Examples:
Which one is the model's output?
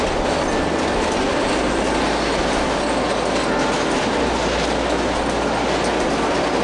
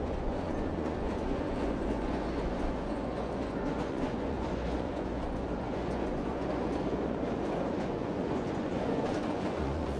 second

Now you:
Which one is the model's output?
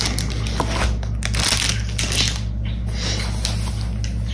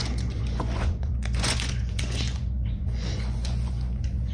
second